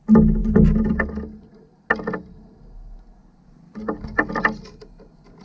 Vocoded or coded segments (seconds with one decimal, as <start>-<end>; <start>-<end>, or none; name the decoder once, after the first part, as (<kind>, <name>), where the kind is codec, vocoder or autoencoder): none